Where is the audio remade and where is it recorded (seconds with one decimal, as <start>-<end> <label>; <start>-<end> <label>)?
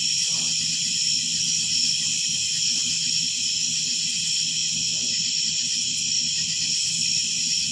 0.0-7.7 recorded